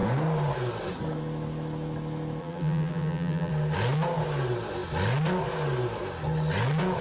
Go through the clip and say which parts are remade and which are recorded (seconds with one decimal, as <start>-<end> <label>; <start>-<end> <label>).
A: 0.0-2.4 recorded; 2.4-3.5 remade; 3.5-7.0 recorded